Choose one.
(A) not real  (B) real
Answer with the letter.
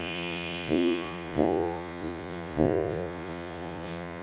A